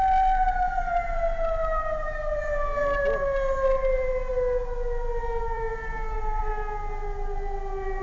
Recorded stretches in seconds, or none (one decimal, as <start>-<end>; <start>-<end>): 4.3-5.2; 6.5-8.0